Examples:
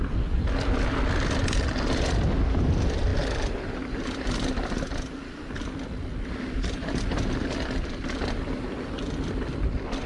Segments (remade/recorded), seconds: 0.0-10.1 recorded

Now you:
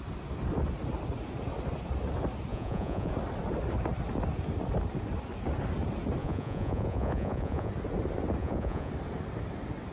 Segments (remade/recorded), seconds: 0.0-2.5 recorded; 2.5-3.1 remade; 3.1-6.2 recorded; 6.2-7.7 remade; 7.7-8.4 recorded; 8.4-8.9 remade; 8.9-9.9 recorded

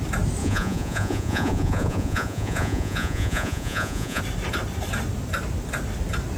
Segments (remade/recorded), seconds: 0.0-0.4 recorded; 0.4-4.2 remade; 4.2-6.4 recorded

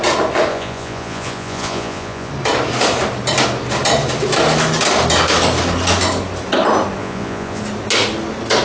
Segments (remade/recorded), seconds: 0.0-0.5 recorded; 0.5-2.3 remade; 2.3-7.0 recorded; 7.0-7.6 remade; 7.6-8.6 recorded

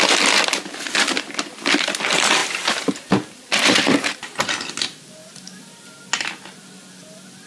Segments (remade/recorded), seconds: 0.0-7.5 recorded

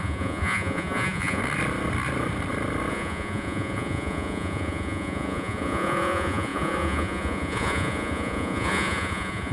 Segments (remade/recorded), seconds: 0.0-1.4 remade; 1.4-2.9 recorded; 2.9-9.5 remade